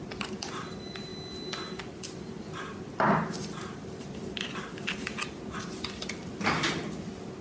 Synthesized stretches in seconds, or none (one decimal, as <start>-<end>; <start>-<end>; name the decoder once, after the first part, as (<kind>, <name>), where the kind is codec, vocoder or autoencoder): none